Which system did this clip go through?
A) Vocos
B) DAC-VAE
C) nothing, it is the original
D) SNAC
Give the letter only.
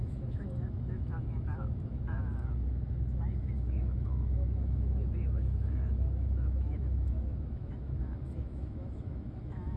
B